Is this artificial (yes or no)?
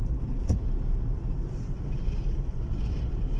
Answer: yes